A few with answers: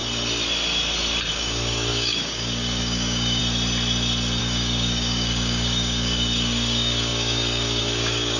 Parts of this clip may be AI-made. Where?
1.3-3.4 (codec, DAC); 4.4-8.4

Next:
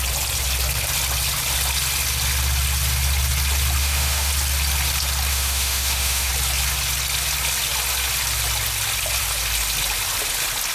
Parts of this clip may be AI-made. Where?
3.8-4.3 (autoencoder, DAC-VAE); 5.3-6.3